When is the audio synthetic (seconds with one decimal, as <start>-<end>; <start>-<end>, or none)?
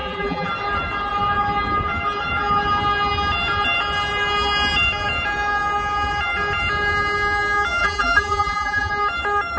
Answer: 0.0-0.5; 7.8-8.9